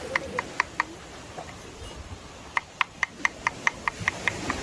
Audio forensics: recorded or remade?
recorded